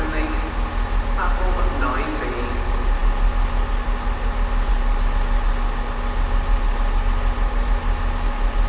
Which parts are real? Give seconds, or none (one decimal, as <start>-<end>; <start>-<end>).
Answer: 0.0-8.7

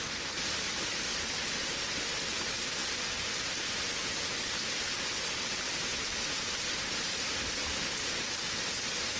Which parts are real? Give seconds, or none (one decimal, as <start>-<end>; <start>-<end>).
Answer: 0.0-9.2

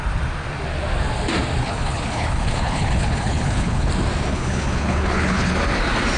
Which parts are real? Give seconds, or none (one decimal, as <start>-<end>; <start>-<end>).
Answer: 0.0-1.6; 3.9-4.3; 5.5-6.2